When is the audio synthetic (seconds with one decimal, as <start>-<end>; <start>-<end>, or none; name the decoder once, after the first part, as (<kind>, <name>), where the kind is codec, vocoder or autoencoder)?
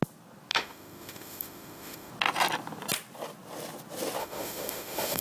0.5-2.1 (autoencoder, DAC-VAE); 4.2-5.2